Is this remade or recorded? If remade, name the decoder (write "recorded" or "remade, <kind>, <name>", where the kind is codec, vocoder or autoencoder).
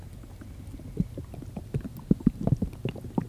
recorded